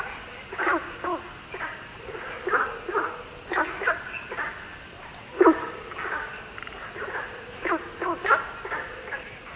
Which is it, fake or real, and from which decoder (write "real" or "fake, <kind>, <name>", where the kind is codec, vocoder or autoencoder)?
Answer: real